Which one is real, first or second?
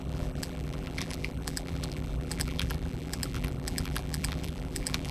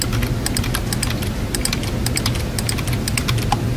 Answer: second